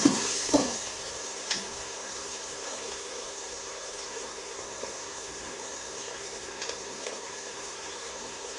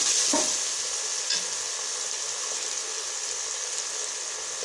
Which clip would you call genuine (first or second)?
second